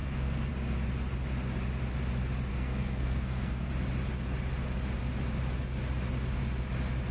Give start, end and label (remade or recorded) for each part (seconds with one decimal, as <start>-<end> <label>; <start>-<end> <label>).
0.0-0.5 remade; 0.5-2.5 recorded; 2.5-3.7 remade; 3.7-7.1 recorded